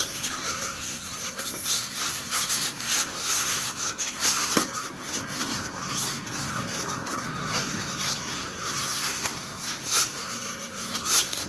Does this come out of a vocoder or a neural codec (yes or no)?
yes